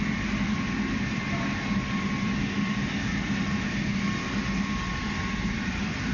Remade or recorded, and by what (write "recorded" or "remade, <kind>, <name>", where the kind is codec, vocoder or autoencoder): recorded